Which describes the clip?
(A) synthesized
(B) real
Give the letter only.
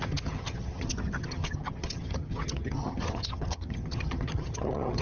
A